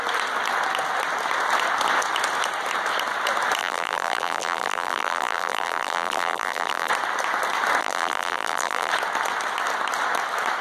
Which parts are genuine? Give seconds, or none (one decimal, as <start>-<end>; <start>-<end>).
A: 0.0-3.6; 6.9-7.8; 8.9-10.6